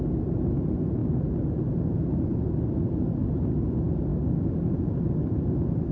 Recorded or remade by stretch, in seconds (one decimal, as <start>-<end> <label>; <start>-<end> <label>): 0.0-4.1 recorded; 4.1-4.6 remade; 4.6-5.9 recorded